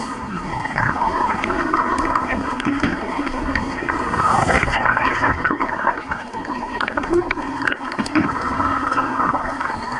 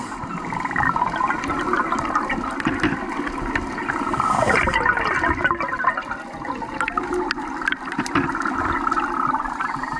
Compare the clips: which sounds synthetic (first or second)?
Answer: first